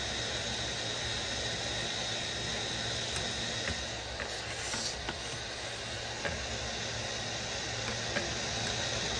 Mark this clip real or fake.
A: real